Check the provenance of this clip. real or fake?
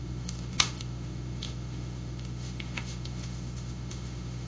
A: fake